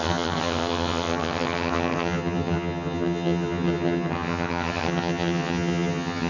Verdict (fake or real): fake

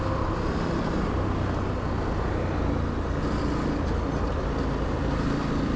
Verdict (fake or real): real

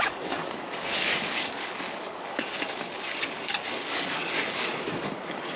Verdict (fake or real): fake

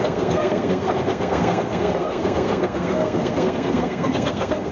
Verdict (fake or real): fake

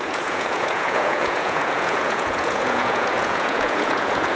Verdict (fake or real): fake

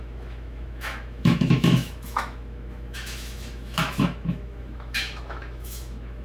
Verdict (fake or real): fake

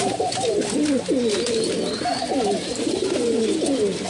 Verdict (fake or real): real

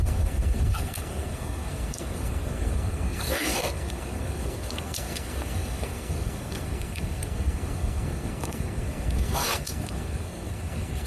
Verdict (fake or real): fake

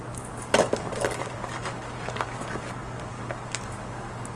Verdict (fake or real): fake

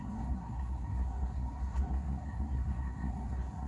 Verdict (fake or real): fake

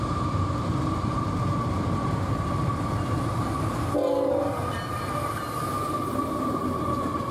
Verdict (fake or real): fake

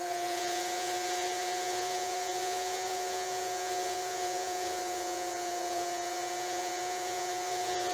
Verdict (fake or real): fake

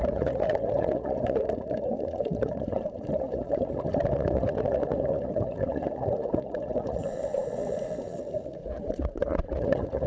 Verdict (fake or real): fake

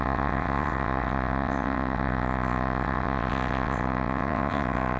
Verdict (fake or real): fake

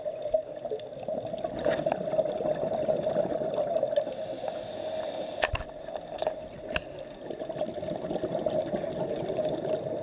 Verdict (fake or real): real